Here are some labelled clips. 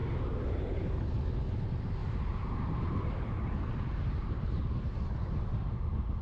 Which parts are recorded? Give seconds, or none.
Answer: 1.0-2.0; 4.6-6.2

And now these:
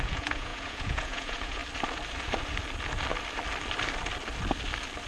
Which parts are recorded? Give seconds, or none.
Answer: 1.6-5.1